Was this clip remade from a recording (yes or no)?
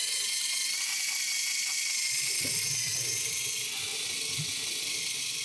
yes